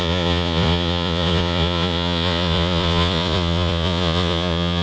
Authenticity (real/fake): fake